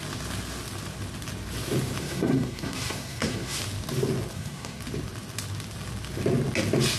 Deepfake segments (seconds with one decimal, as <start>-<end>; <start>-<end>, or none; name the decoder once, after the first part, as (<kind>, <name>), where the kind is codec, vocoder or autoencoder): 2.0-3.6 (codec, SNAC); 4.3-4.8